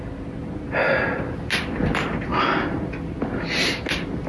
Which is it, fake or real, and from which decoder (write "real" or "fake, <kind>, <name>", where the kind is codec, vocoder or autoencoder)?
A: real